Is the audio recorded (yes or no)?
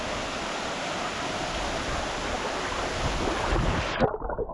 yes